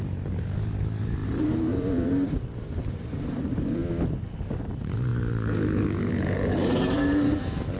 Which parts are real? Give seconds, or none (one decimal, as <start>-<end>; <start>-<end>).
3.8-4.6